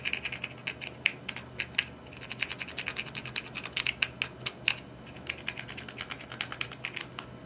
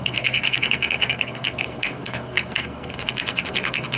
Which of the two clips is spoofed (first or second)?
second